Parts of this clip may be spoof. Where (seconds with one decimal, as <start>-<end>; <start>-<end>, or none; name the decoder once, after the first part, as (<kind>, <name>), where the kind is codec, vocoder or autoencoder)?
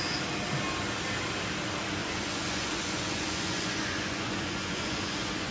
2.0-5.5 (vocoder, Vocos)